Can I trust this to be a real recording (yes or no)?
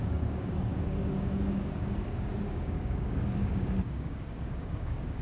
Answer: no